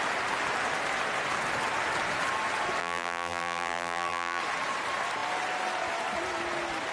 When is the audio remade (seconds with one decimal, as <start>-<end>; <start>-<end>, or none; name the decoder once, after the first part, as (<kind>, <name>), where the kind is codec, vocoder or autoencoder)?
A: 2.8-4.4 (vocoder, BigVGAN v2)